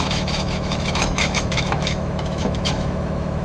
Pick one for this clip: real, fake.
fake